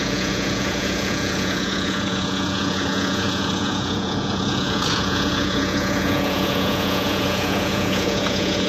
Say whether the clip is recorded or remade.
remade